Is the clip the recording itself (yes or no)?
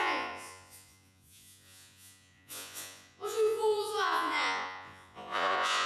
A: no